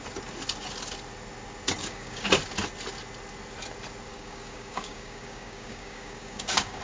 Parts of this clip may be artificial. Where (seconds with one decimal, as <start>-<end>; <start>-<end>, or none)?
1.8-2.3; 4.1-6.8